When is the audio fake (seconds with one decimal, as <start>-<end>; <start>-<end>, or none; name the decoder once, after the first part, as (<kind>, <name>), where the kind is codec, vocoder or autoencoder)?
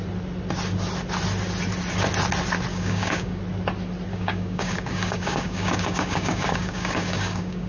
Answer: 2.7-3.4 (codec, DAC); 4.1-7.7